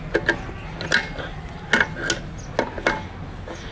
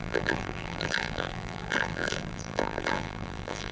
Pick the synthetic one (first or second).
second